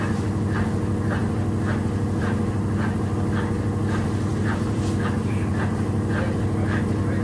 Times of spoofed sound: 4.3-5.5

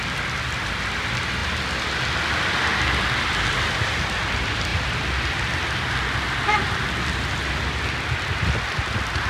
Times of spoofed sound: none

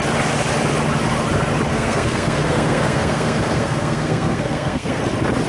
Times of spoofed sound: 1.7-5.0